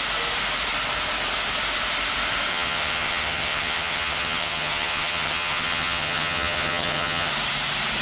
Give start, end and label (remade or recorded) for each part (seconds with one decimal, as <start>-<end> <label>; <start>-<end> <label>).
0.0-2.5 recorded; 2.5-7.3 remade; 7.3-8.0 recorded